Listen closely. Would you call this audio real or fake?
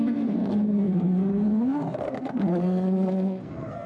fake